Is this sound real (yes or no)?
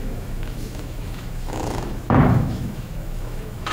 no